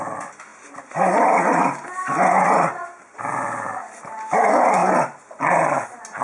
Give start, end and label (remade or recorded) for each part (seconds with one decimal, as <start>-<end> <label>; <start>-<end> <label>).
0.0-6.2 recorded

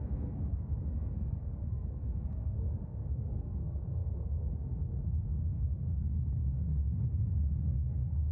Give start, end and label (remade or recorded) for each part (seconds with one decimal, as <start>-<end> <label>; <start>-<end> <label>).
0.0-6.7 remade; 6.7-7.2 recorded; 7.2-8.3 remade

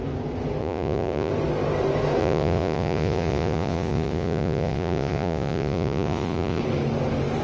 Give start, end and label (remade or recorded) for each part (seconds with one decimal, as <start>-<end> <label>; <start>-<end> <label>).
0.0-0.6 recorded; 0.6-1.3 remade; 1.3-2.2 recorded; 2.2-6.6 remade; 6.6-7.4 recorded

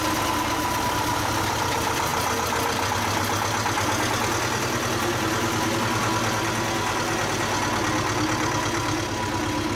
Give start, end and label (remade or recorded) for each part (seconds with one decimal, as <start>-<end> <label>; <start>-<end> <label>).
0.0-9.8 recorded

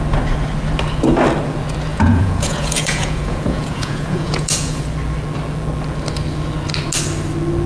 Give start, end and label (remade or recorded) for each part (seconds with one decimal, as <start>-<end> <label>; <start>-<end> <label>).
0.0-1.9 recorded; 1.9-4.8 remade; 4.8-7.7 recorded

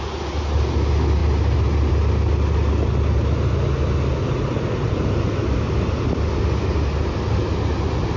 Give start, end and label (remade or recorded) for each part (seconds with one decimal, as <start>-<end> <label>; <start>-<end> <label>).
0.0-8.2 recorded